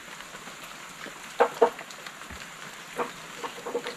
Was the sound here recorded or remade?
recorded